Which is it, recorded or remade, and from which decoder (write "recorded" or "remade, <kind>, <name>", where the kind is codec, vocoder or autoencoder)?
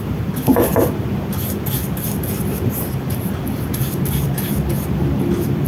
recorded